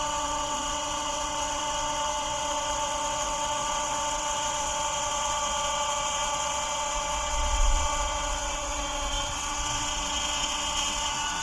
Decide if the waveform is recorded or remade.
remade